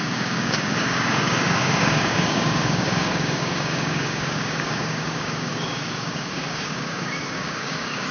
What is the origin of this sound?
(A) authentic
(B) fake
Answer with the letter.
B